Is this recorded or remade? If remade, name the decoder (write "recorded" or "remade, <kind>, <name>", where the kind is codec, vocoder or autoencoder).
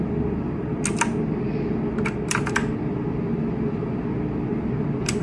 recorded